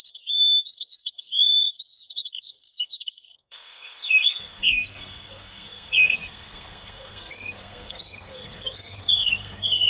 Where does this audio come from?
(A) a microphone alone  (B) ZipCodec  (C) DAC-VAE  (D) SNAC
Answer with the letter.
D